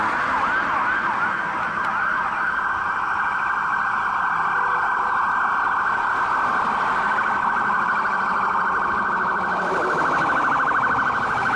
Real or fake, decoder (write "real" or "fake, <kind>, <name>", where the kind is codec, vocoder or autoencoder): real